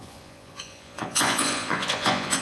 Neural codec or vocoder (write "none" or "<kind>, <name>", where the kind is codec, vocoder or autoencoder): vocoder, Vocos